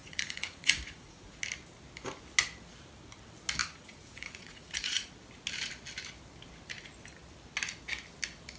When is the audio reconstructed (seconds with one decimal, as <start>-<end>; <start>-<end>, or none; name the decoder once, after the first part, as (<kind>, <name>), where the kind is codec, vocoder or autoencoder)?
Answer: 0.0-1.4 (vocoder, Vocos); 3.6-5.1